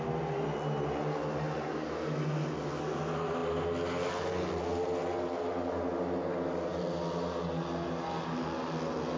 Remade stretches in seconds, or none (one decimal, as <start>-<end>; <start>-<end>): none